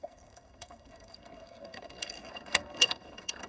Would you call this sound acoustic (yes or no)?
no